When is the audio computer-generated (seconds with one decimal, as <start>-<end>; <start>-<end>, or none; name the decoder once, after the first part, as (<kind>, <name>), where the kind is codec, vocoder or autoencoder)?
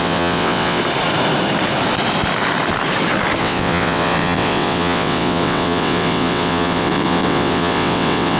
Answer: 0.0-0.8 (vocoder, WaveNeXt); 3.4-8.4